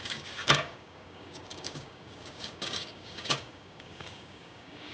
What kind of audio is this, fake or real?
fake